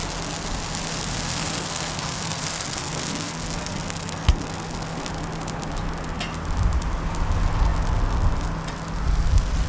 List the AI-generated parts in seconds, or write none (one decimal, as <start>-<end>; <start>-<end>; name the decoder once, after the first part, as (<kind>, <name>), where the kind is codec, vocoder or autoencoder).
1.1-5.1 (codec, SNAC)